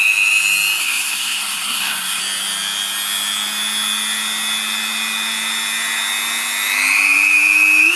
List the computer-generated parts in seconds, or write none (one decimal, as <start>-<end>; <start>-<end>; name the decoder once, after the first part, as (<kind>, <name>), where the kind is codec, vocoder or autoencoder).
0.8-2.2 (codec, SNAC)